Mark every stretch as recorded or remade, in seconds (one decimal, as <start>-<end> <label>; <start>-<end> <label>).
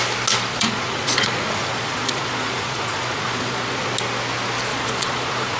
0.0-0.5 recorded; 0.5-3.9 remade; 3.9-4.7 recorded; 4.7-5.6 remade